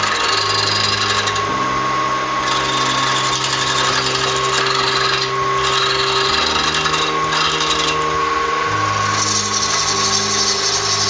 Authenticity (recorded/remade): recorded